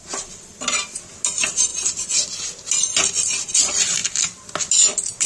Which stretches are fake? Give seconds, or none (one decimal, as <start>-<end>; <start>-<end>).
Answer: none